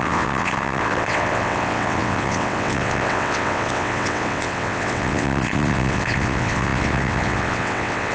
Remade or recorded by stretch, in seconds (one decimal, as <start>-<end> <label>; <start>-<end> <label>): 0.0-8.1 remade